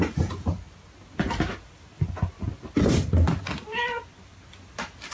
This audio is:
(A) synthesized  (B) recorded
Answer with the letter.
B